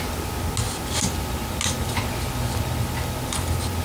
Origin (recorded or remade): recorded